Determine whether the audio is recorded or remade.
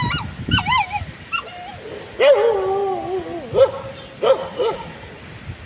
recorded